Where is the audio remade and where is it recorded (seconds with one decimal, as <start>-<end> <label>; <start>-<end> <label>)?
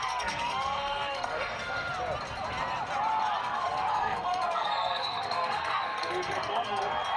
0.0-1.9 remade; 1.9-3.4 recorded; 3.4-6.8 remade; 6.8-7.2 recorded